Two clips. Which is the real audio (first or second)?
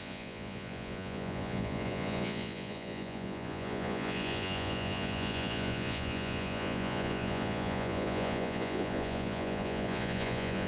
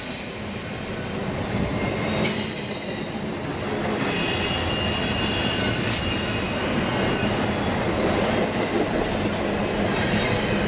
second